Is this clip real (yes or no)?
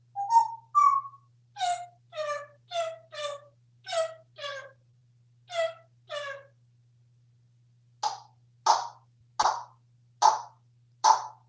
yes